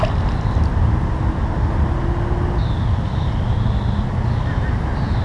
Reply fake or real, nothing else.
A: real